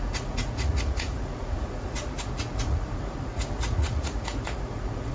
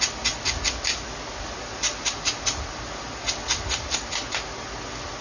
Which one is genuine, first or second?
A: second